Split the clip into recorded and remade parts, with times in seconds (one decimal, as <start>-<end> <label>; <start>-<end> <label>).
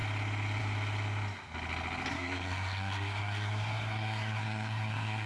0.0-2.1 recorded; 2.1-5.3 remade